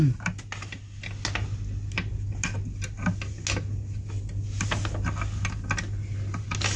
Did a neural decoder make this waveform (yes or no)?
no